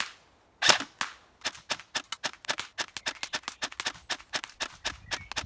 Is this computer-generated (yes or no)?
no